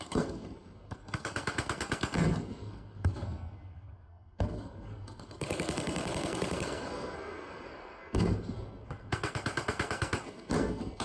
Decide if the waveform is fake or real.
fake